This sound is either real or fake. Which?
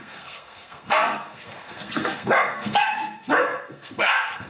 fake